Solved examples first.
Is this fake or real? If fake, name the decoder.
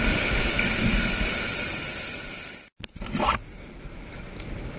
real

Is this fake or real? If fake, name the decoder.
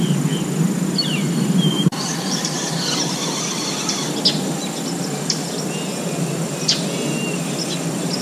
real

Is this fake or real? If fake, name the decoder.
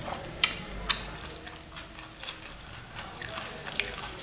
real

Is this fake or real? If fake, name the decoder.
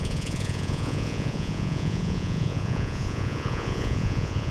fake, vocoder, Vocos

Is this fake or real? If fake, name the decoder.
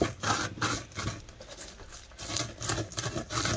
real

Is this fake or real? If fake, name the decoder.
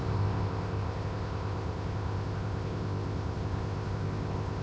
fake, codec, ZipCodec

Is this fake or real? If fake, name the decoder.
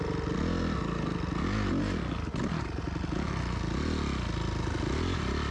real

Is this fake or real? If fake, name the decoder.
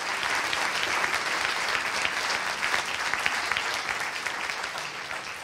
real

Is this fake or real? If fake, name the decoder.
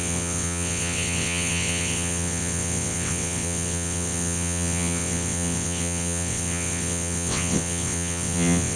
fake, vocoder, WaveNeXt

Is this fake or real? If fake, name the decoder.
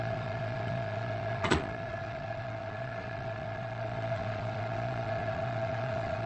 fake, vocoder, Vocos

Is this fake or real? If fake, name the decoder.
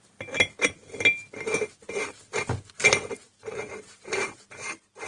real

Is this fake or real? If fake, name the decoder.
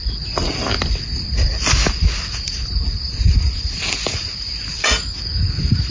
real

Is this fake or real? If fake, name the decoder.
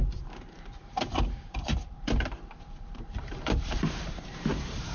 fake, vocoder, BigVGAN v2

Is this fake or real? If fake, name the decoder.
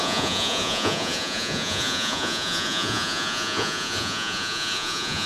fake, vocoder, Vocos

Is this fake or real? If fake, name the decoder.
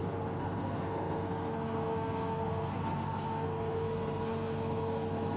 fake, codec, SNAC